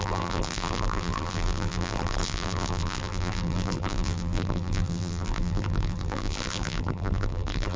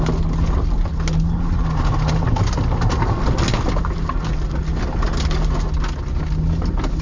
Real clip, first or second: second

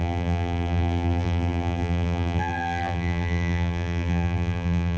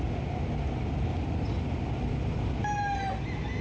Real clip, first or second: second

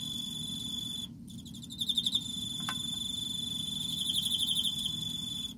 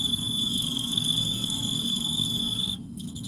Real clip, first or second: first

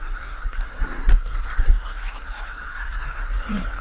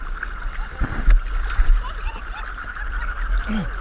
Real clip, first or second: second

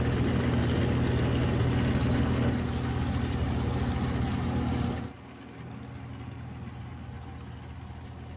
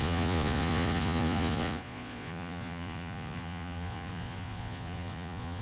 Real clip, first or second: first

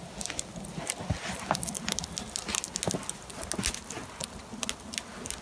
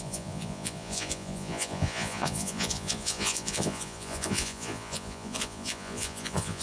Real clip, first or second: first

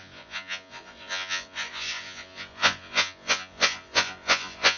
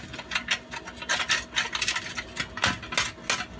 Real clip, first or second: second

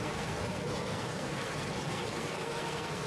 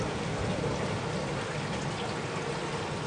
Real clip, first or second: second